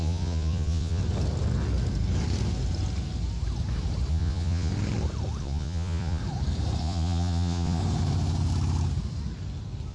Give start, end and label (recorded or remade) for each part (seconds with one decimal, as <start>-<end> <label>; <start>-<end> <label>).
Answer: 0.0-1.0 remade; 1.0-4.1 recorded; 4.1-4.7 remade; 4.7-5.4 recorded; 5.4-6.2 remade; 6.2-6.8 recorded; 6.8-7.8 remade; 7.8-9.9 recorded